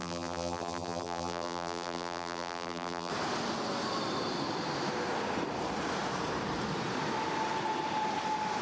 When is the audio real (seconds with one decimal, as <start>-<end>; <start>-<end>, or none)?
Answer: 3.1-8.6